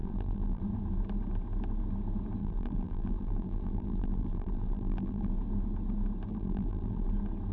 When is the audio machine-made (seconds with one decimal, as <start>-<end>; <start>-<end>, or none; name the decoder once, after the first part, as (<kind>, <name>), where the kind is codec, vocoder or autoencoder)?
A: 0.0-0.6 (vocoder, BigVGAN v2); 2.4-5.3; 6.3-7.1